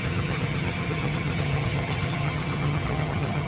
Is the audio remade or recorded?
remade